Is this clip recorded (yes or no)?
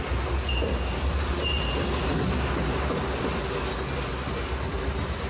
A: yes